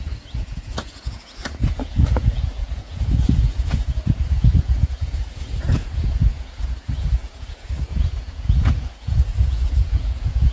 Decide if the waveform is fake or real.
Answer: fake